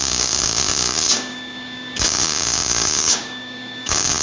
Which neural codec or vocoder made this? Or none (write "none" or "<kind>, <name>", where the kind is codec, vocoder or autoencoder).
codec, DAC